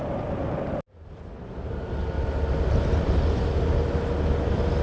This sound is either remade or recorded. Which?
recorded